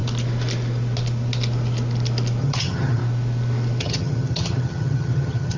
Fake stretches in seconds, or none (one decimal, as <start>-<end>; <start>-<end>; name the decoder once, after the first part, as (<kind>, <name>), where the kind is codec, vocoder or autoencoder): 2.4-3.0 (vocoder, HiFi-GAN); 3.8-5.6